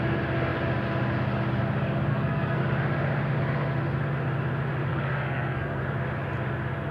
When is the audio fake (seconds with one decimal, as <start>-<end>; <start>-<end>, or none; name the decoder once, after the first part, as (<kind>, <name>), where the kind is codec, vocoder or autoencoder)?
2.1-2.6 (codec, SNAC); 4.9-5.8